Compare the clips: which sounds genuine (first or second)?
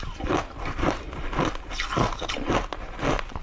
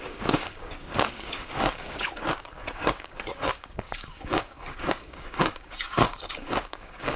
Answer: first